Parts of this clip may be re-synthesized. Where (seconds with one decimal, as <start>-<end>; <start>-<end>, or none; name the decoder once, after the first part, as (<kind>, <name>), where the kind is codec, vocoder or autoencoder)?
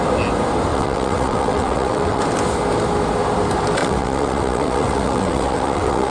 0.7-2.2 (vocoder, WaveNeXt); 3.8-6.1